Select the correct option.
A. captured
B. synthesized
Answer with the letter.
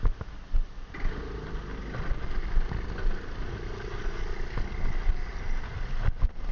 A